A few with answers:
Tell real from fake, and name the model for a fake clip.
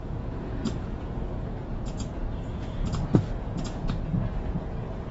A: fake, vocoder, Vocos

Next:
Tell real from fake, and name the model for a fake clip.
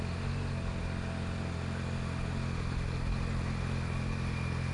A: real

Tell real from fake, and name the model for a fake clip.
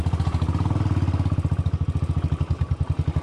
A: real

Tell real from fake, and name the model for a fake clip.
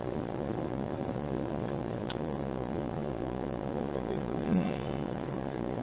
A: fake, vocoder, Vocos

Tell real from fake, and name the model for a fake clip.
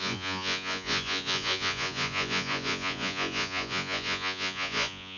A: fake, vocoder, Vocos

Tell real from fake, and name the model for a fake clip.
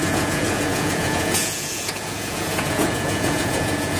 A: fake, vocoder, Vocos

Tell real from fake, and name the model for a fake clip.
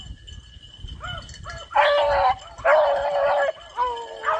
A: real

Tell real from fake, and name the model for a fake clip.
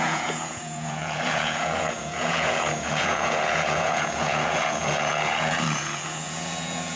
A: fake, vocoder, Vocos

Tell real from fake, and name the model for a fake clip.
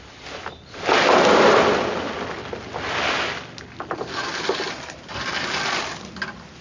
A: real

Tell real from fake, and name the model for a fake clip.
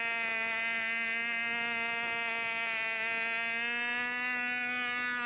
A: real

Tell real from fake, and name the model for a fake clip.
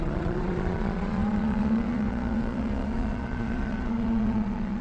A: fake, vocoder, Vocos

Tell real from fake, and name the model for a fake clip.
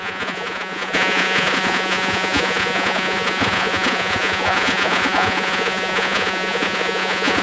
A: fake, vocoder, Vocos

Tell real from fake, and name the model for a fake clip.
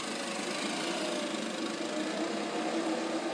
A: real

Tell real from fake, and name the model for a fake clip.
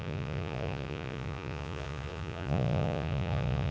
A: fake, vocoder, Vocos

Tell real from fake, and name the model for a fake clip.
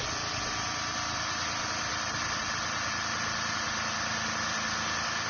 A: real